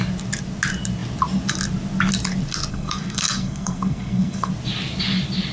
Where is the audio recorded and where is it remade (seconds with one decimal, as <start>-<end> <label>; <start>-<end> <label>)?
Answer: 0.0-2.7 recorded; 2.7-4.5 remade; 4.5-5.5 recorded